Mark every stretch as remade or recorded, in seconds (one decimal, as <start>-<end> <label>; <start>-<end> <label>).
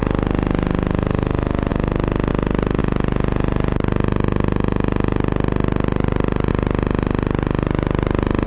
0.0-8.5 recorded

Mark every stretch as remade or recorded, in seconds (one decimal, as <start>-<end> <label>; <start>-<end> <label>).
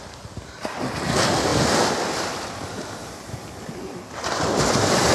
0.0-5.1 recorded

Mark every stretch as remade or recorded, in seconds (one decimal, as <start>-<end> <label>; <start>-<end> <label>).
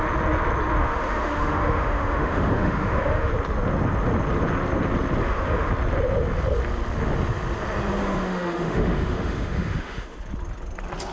0.0-0.8 recorded; 0.8-3.3 remade; 3.3-5.2 recorded; 5.2-5.7 remade; 5.7-8.0 recorded; 8.0-10.2 remade; 10.2-11.1 recorded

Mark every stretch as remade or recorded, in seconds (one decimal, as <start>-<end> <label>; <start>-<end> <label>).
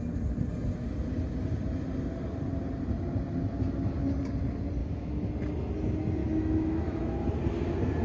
0.0-4.8 recorded; 4.8-5.3 remade; 5.3-6.2 recorded; 6.2-7.3 remade; 7.3-8.0 recorded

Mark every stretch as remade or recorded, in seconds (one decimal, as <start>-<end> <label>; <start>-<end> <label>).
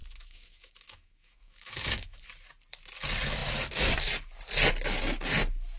0.0-2.2 remade; 2.2-5.8 recorded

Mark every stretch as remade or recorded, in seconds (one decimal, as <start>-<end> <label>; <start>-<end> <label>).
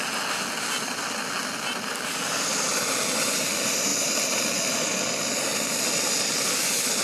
0.0-7.0 recorded